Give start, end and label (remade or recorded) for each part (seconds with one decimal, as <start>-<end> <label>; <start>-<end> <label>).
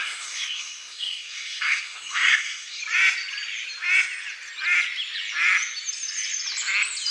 0.0-2.8 remade; 2.8-7.1 recorded